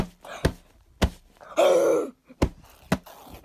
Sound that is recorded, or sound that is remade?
recorded